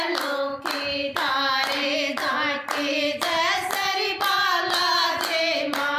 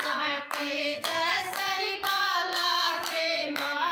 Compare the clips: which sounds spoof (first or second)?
second